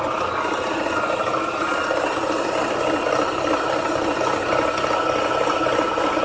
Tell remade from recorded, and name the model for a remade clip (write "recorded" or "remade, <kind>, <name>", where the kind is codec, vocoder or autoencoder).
recorded